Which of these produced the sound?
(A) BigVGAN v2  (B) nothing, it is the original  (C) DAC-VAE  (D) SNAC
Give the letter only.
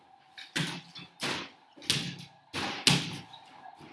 B